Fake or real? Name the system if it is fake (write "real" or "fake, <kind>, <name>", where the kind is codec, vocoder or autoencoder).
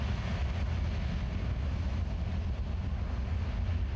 real